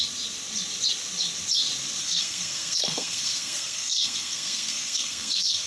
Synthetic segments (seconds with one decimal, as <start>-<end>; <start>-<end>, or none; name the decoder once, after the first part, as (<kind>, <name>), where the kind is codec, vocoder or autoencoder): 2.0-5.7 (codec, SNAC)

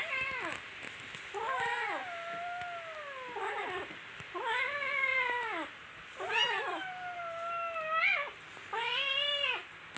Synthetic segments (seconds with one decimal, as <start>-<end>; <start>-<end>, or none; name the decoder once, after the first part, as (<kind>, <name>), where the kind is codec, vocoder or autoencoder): none

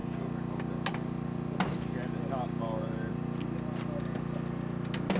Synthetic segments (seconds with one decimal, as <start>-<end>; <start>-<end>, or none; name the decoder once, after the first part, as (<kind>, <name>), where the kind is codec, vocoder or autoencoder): none

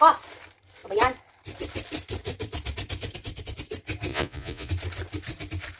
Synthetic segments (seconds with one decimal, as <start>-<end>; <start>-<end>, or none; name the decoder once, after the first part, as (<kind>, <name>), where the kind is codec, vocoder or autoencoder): 4.1-4.7 (vocoder, Vocos)

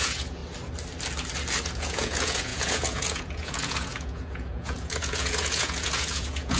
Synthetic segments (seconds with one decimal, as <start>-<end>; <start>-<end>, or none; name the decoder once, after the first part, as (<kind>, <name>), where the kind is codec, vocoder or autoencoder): 0.0-0.4 (vocoder, Vocos); 1.6-6.6